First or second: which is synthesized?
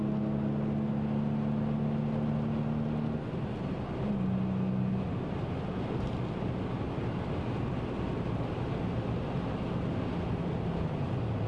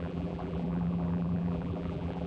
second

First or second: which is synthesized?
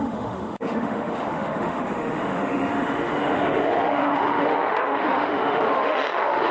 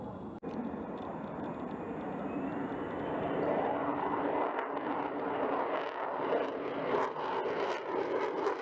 first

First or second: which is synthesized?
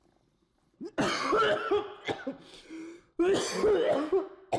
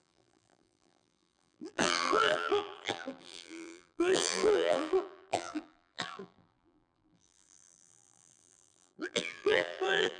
second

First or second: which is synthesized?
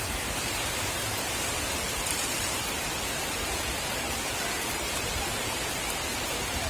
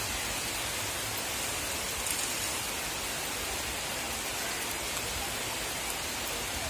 first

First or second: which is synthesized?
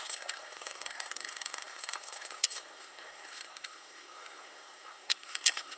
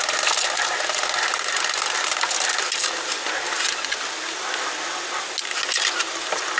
first